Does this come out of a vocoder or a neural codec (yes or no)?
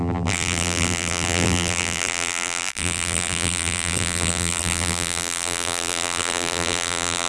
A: yes